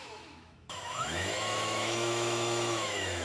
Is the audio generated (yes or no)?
yes